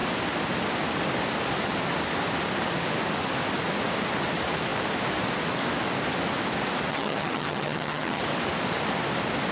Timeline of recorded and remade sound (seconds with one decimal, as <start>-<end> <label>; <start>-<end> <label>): 0.0-6.9 recorded; 6.9-8.2 remade; 8.2-9.5 recorded